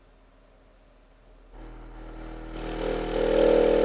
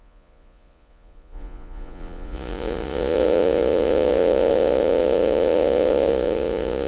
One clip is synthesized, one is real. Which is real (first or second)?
first